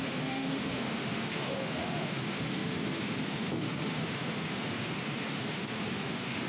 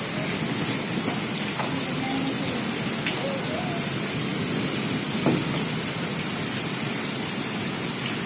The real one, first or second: second